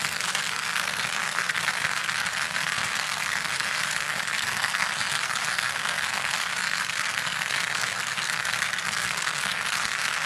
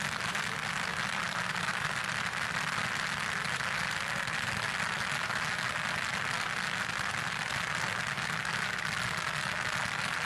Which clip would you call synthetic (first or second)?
first